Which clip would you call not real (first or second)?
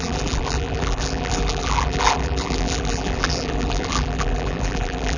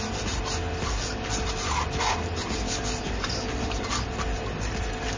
first